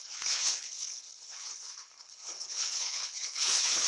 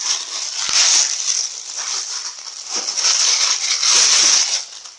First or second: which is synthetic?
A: first